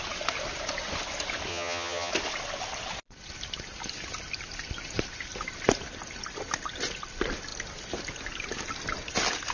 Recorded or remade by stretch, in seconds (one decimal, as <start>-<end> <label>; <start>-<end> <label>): 0.0-1.5 recorded; 1.5-2.1 remade; 2.1-9.5 recorded